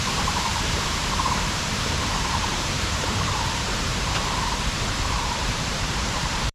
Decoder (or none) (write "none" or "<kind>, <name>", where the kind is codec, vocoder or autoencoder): vocoder, BigVGAN v2